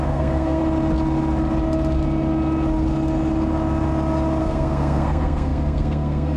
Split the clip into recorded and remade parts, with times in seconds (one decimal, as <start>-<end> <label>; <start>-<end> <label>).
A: 0.0-0.6 remade; 0.6-4.4 recorded; 4.4-6.4 remade